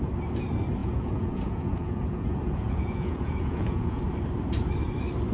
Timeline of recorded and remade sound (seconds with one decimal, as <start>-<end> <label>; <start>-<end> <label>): 0.0-0.8 recorded; 0.8-4.0 remade; 4.0-5.3 recorded